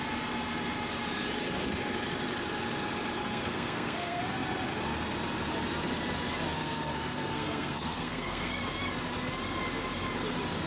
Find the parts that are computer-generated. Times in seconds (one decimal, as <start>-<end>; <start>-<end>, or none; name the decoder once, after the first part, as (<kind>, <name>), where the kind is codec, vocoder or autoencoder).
3.2-4.2 (codec, SNAC); 6.6-8.6